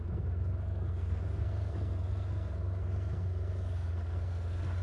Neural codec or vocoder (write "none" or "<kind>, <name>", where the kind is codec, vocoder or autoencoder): codec, SNAC